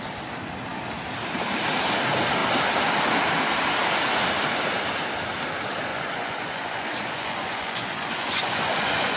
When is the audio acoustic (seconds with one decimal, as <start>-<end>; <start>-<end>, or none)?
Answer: 0.0-5.9